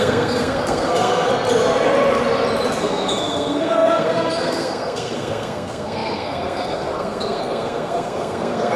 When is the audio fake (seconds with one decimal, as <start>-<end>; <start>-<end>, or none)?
0.0-1.3; 2.8-8.8